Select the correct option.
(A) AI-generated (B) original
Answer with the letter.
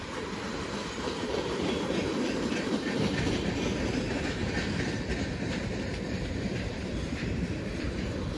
A